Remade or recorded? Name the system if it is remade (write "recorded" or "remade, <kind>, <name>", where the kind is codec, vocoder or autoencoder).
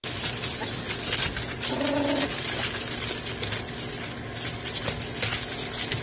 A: recorded